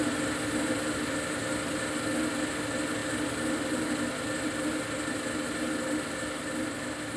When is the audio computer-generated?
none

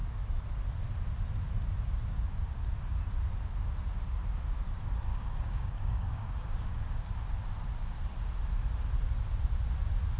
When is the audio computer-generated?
5.1-7.1

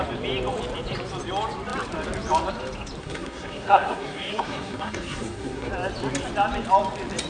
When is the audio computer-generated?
3.0-5.7

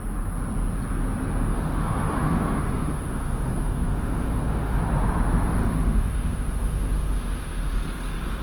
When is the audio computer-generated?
1.5-4.8; 5.6-7.7

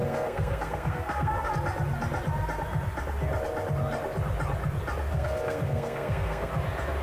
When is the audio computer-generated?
0.0-1.5; 5.1-6.5

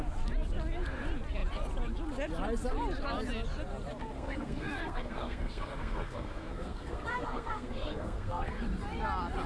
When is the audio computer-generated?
4.0-8.6

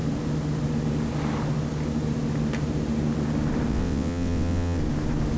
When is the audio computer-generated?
3.7-4.8